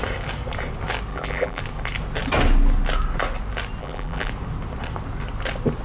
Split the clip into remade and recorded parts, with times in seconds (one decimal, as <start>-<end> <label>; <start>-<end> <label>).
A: 0.0-1.1 recorded; 1.1-1.6 remade; 1.6-3.8 recorded; 3.8-4.3 remade; 4.3-5.8 recorded